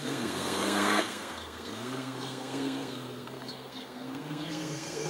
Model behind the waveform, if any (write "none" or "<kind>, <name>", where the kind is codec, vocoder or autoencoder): codec, SNAC